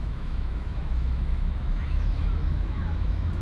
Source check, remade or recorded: remade